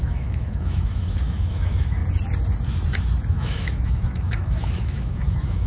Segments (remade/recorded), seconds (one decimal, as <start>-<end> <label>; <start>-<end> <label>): 0.0-2.0 remade; 2.0-3.3 recorded; 3.3-5.7 remade